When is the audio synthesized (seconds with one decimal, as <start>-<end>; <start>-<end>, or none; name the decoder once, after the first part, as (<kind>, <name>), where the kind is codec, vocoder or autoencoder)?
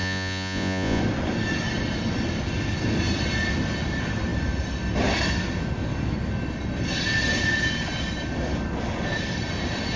0.0-1.0 (vocoder, Vocos)